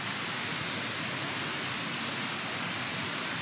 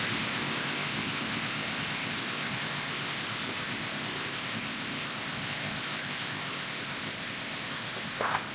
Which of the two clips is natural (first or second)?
first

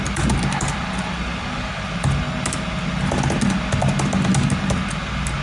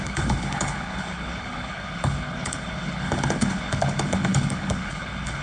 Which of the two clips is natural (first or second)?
first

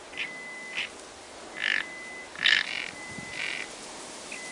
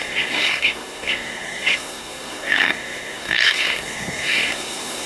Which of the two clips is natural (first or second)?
first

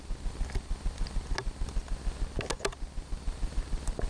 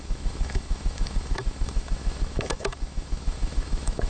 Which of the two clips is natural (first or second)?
first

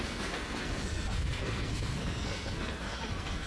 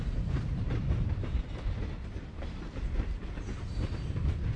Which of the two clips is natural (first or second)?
second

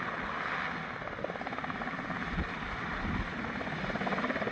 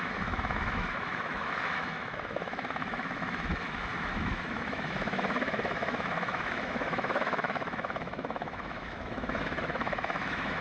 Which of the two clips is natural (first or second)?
first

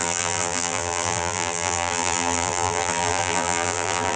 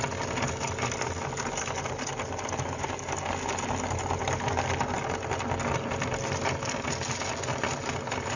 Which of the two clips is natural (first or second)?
second